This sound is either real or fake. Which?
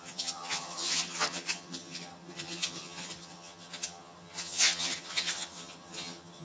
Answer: fake